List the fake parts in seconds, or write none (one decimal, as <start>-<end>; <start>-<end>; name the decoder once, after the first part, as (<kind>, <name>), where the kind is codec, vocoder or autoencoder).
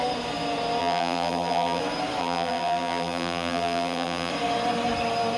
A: 0.8-1.8 (vocoder, BigVGAN v2); 2.2-4.3